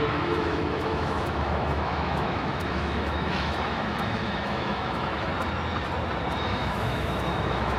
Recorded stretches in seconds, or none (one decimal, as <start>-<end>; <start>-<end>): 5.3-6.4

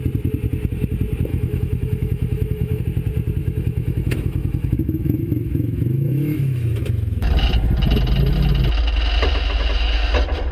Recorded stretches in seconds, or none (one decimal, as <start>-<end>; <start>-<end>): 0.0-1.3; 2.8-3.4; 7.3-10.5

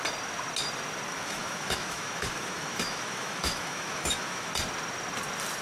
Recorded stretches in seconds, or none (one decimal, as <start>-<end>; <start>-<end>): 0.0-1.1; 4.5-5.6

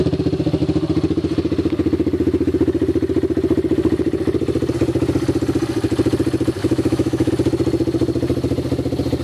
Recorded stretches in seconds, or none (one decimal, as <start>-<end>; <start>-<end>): 0.0-6.6; 7.3-9.2

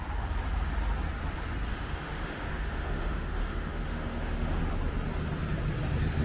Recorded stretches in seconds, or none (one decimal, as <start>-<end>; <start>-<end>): 0.0-1.7; 4.6-6.2